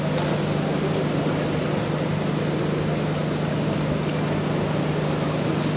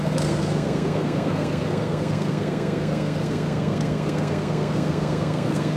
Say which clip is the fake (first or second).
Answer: second